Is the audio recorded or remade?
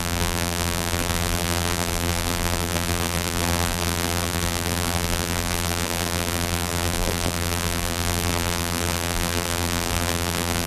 remade